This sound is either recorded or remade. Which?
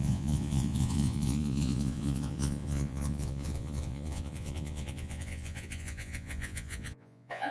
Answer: remade